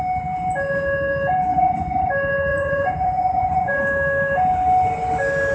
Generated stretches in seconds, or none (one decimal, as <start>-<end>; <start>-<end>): 1.5-2.1; 2.5-3.8